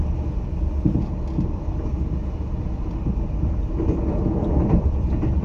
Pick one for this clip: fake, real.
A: real